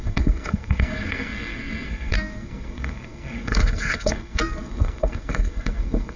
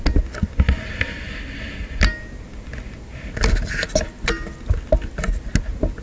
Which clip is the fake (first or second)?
first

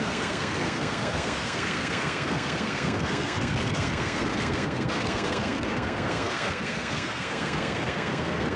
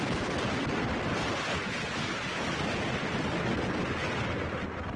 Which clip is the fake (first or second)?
first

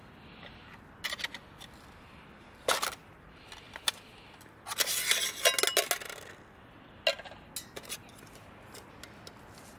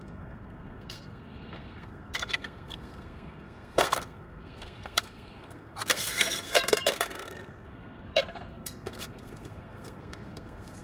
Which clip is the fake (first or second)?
second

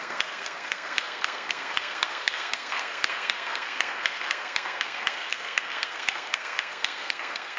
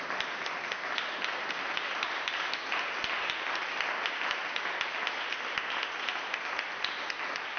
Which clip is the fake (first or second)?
first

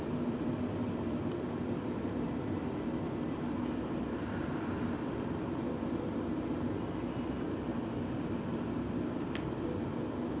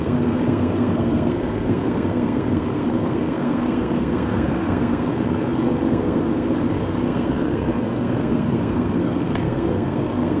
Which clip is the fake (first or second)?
second